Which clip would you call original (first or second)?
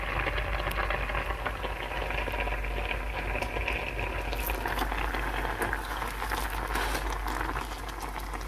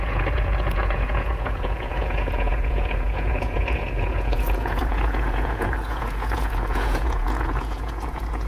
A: first